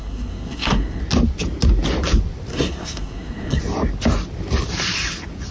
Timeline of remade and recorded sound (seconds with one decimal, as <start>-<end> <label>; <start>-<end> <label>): 0.0-1.0 remade; 1.0-2.5 recorded; 2.5-3.6 remade; 3.6-5.5 recorded